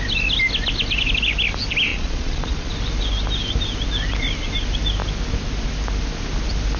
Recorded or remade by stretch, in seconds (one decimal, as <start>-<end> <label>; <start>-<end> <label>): 0.0-1.9 recorded; 1.9-2.7 remade; 2.7-6.8 recorded